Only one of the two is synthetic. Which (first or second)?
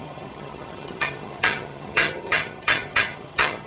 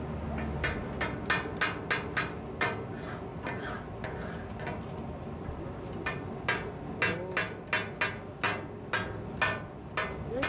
first